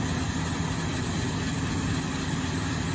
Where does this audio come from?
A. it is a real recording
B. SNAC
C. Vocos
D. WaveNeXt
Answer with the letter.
A